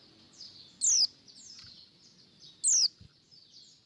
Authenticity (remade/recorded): recorded